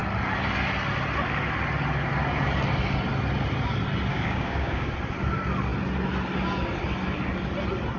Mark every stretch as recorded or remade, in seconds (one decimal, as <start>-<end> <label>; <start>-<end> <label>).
0.0-4.1 recorded; 4.1-4.9 remade; 4.9-8.0 recorded